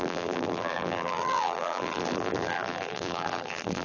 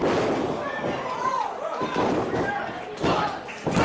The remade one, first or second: first